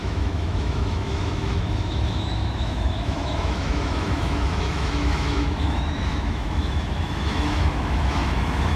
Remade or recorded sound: remade